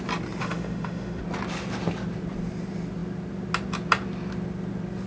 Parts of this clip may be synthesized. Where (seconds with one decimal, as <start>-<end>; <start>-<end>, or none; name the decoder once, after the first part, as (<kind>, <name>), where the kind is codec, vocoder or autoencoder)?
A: 0.4-1.2 (autoencoder, DAC-VAE)